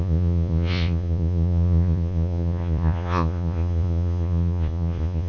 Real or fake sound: fake